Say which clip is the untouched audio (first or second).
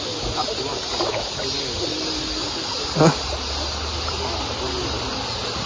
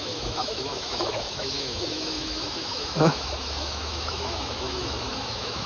first